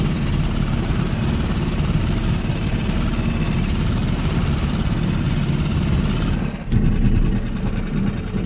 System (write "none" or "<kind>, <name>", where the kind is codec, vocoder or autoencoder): none